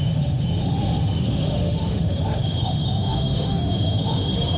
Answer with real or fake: fake